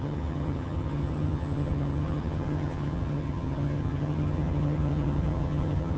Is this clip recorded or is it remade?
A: remade